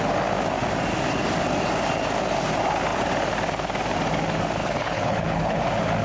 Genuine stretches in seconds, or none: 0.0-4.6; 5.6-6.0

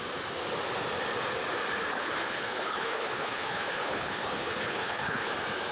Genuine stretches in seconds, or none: 0.0-1.9; 5.3-5.7

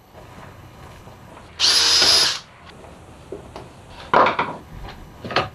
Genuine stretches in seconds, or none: 1.3-4.6

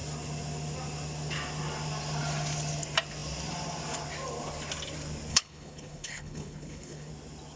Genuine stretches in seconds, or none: 0.0-5.3; 7.1-7.6